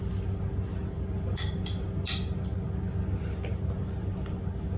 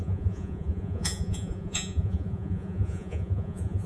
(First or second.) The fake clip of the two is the second